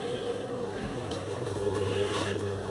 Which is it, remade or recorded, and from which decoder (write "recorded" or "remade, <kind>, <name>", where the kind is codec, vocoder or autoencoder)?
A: remade, codec, SNAC